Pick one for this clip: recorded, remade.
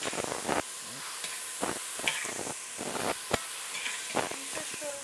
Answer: recorded